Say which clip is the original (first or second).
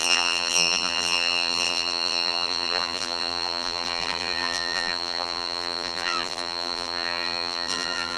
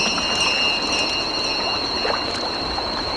second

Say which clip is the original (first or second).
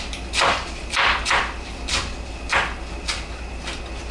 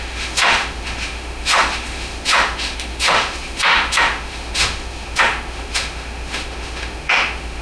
first